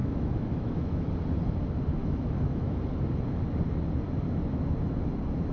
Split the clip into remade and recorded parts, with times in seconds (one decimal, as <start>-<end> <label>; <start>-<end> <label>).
0.0-1.1 remade; 1.1-2.0 recorded; 2.0-2.8 remade; 2.8-5.5 recorded